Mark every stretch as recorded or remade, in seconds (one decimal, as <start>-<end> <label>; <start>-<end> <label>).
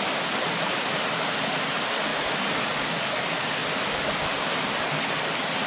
0.0-5.7 recorded